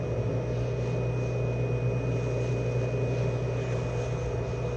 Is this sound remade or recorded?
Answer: recorded